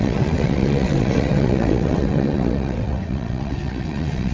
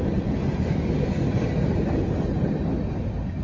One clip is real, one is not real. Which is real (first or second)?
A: second